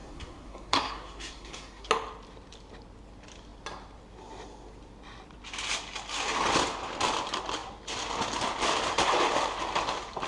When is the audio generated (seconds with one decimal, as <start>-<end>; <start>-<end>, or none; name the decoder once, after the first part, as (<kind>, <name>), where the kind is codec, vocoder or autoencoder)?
0.0-1.9 (codec, SNAC)